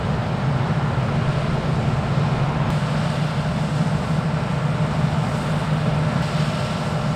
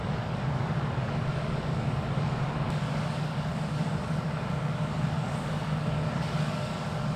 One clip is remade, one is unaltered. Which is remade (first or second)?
second